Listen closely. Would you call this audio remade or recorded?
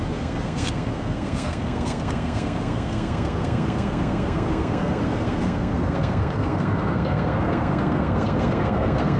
remade